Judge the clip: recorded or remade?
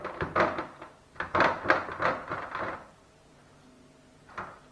recorded